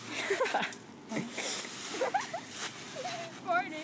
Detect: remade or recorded recorded